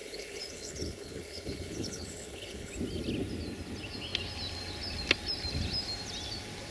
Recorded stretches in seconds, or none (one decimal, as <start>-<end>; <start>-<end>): 2.7-6.7